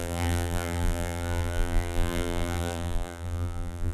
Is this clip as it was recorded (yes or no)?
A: no